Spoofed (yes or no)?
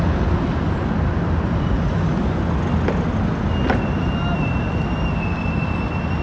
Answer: no